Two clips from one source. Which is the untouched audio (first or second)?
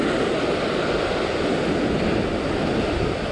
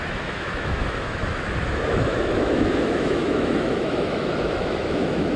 first